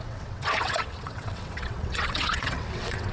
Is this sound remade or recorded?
remade